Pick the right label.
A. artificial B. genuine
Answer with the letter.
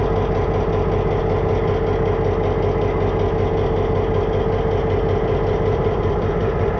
B